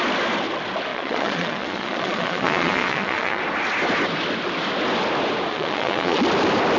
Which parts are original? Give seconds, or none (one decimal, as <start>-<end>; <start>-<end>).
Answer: 0.0-0.9; 3.4-5.5; 6.2-6.8